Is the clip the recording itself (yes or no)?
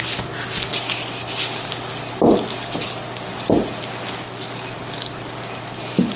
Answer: yes